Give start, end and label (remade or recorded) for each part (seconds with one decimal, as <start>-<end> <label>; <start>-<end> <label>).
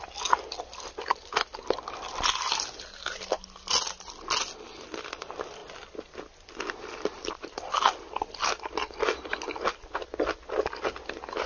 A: 0.0-5.6 recorded; 5.6-7.3 remade; 7.3-11.5 recorded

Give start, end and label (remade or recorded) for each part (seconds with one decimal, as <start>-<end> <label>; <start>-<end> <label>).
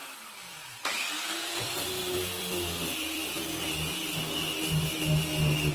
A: 0.0-3.4 remade; 3.4-5.7 recorded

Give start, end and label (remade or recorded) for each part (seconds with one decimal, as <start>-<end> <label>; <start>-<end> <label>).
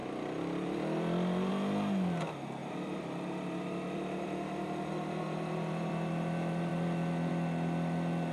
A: 0.0-1.5 remade; 1.5-2.6 recorded; 2.6-5.9 remade; 5.9-8.3 recorded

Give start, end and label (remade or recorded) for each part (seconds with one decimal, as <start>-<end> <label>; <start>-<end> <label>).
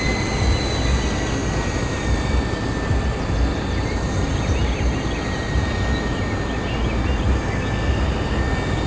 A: 0.0-3.5 recorded; 3.5-5.7 remade; 5.7-8.9 recorded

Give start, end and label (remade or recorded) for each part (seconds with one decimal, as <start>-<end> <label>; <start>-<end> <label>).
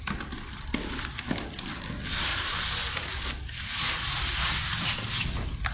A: 0.0-5.7 recorded